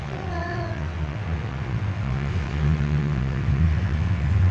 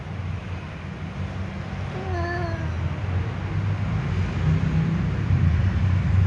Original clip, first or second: second